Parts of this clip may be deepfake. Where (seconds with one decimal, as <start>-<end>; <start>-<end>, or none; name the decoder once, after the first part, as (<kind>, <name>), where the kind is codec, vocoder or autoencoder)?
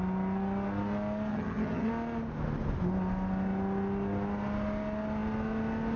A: 1.3-1.9 (vocoder, HiFi-GAN)